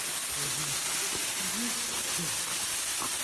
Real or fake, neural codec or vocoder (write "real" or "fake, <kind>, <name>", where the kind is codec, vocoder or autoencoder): real